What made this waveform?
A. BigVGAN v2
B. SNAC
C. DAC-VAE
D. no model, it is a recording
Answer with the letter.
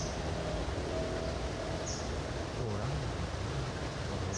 A